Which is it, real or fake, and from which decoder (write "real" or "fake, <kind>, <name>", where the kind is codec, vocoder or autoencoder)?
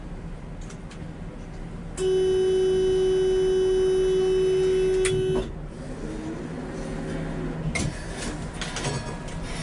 real